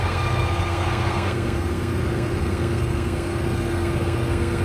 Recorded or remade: remade